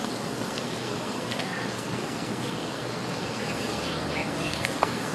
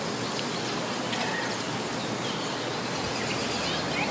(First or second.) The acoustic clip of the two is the second